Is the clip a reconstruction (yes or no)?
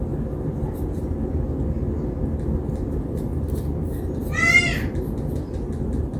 no